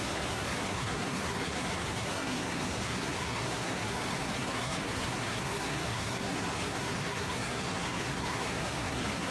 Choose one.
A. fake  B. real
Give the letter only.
A